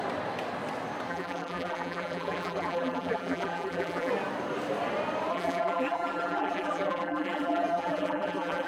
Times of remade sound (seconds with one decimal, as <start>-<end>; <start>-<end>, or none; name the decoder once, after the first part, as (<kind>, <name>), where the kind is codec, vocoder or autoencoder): 1.1-4.1 (vocoder, BigVGAN v2); 5.3-8.7